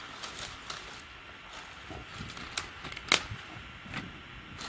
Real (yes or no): yes